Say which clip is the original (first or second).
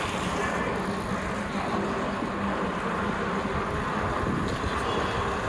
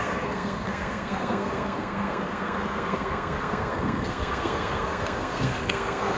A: first